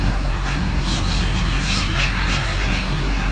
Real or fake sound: fake